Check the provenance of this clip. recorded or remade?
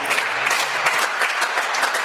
remade